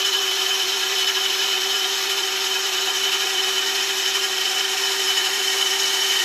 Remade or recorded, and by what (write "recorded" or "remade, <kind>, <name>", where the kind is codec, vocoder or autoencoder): remade, vocoder, BigVGAN v2